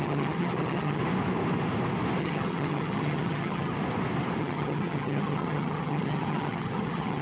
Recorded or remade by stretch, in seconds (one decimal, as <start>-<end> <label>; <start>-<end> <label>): 0.0-1.0 remade; 1.0-2.2 recorded; 2.2-3.7 remade; 3.7-4.4 recorded; 4.4-7.2 remade